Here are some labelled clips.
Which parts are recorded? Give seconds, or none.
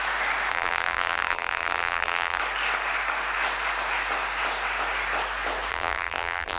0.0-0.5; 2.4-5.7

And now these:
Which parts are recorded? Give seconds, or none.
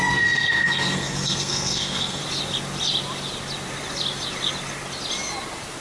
2.2-5.8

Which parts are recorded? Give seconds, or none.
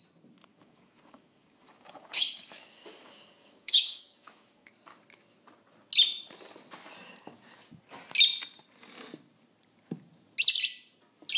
0.0-0.5; 4.7-11.4